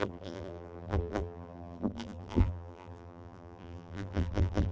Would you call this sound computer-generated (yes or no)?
yes